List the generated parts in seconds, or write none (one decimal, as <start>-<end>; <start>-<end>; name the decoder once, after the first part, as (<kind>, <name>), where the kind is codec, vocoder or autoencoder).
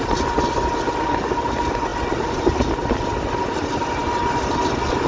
none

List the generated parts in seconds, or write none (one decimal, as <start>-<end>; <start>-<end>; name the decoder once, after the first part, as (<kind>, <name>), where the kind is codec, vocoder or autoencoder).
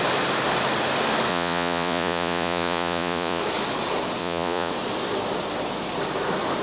1.3-3.4 (vocoder, Vocos); 4.2-4.7